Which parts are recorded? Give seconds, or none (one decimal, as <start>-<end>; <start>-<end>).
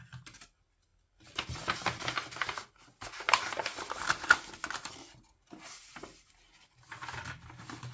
0.0-7.9